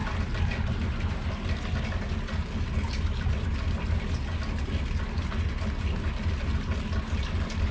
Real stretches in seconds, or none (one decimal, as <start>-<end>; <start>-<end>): 0.0-7.7